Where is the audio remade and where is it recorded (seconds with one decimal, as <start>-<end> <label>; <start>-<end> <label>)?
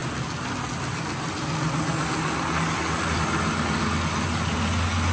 0.0-5.1 recorded